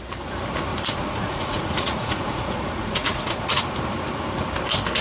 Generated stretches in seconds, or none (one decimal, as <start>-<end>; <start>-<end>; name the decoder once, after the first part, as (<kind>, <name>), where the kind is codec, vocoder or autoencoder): 0.7-3.6 (vocoder, Vocos)